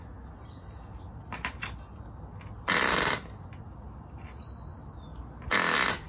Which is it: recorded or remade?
recorded